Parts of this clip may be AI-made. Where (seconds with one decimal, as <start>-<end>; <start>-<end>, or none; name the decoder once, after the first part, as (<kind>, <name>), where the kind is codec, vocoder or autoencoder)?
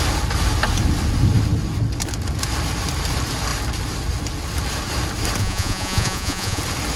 5.4-6.6 (vocoder, Vocos)